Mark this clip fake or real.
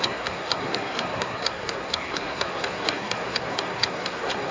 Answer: fake